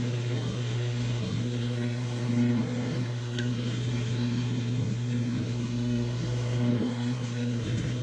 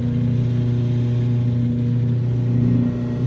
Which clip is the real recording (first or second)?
second